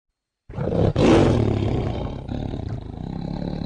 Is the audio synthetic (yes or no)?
no